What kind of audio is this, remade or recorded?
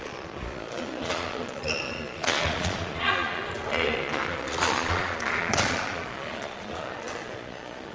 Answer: remade